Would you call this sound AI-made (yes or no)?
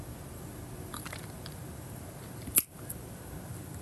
yes